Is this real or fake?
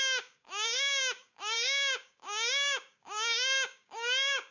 fake